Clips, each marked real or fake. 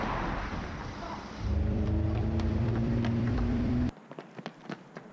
fake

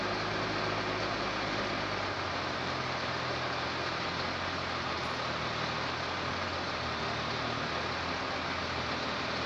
real